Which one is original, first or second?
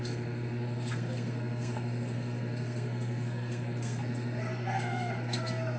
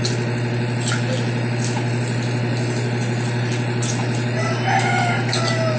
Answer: second